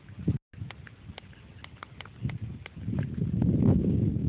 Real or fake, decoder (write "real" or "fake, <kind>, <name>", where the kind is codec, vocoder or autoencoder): real